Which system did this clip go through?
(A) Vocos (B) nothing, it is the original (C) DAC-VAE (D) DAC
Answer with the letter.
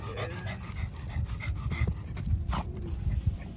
B